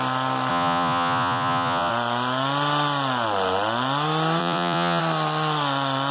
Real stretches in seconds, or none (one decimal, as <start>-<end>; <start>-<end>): 0.0-0.5; 1.9-4.4; 5.0-6.1